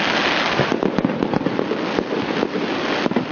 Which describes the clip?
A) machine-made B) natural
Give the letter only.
B